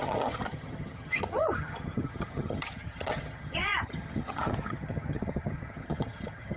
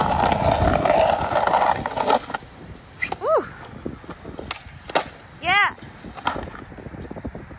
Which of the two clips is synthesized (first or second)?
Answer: first